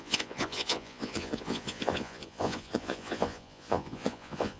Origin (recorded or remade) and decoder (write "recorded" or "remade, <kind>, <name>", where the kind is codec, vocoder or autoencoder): remade, vocoder, Vocos